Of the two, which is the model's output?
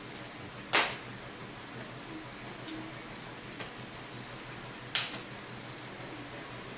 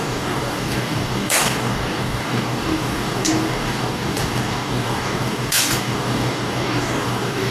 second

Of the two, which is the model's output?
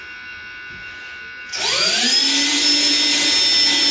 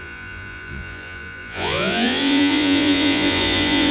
second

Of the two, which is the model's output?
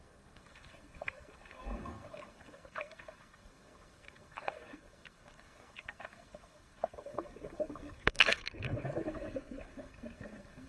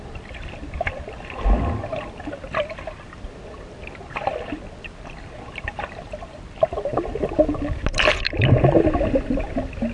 first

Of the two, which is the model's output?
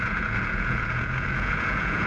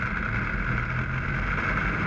first